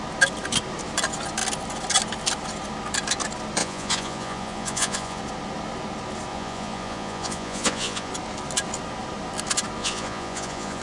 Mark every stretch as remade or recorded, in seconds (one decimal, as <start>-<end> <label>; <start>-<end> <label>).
0.0-3.6 recorded; 3.6-5.2 remade; 5.2-6.3 recorded; 6.3-8.1 remade; 8.1-9.8 recorded; 9.8-10.8 remade